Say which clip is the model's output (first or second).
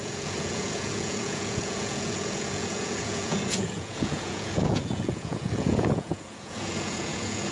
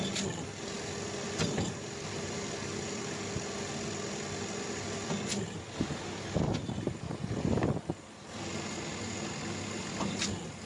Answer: first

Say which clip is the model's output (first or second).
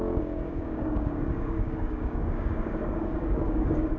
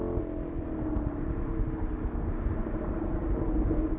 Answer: first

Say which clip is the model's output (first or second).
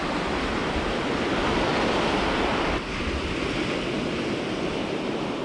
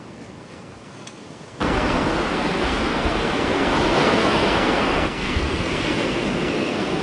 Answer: second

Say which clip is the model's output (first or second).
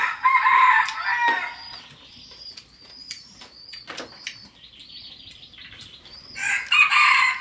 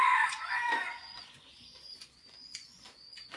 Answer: second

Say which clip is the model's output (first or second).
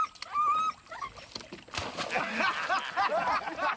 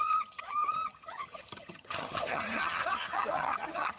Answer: second